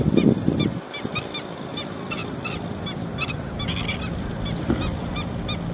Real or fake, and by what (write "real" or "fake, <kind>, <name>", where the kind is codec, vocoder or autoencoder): real